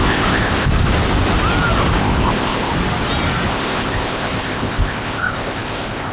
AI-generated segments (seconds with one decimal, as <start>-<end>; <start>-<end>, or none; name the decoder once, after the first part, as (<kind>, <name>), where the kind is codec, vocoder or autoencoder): 0.0-0.7 (codec, ZipCodec); 2.0-2.7; 3.5-6.1